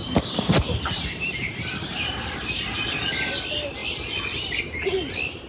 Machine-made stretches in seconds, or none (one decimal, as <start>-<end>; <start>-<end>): 0.0-3.3